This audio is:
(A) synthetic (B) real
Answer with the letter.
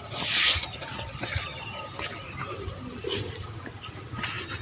B